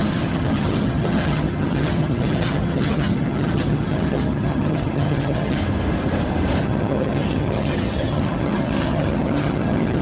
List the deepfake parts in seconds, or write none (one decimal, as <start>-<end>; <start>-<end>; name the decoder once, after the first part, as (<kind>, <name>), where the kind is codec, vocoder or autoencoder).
0.0-5.6 (vocoder, HiFi-GAN); 6.6-10.0